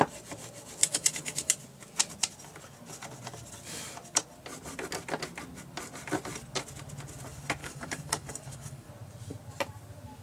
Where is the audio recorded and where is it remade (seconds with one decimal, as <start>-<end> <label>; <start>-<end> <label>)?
0.0-0.8 recorded; 0.8-1.5 remade; 1.5-7.6 recorded; 7.6-8.9 remade; 8.9-10.2 recorded